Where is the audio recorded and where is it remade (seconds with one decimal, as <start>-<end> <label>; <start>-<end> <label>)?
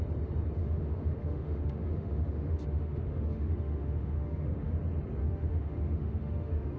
0.0-0.6 recorded; 0.6-4.7 remade; 4.7-5.2 recorded; 5.2-6.8 remade